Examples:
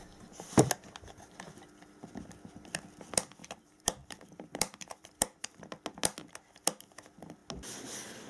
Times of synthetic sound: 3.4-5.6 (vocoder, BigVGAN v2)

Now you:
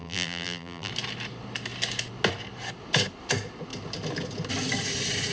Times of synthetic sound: 0.0-0.9 (vocoder, BigVGAN v2)

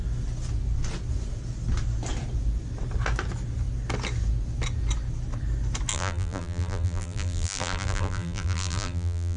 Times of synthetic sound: 5.9-9.4 (vocoder, BigVGAN v2)

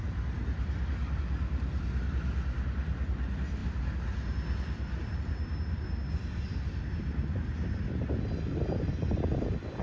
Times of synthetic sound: none

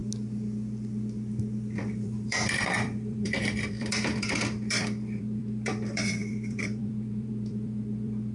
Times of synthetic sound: 1.8-8.3 (vocoder, BigVGAN v2)

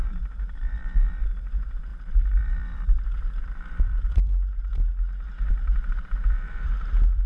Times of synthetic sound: 0.0-4.9 (vocoder, BigVGAN v2); 5.5-7.3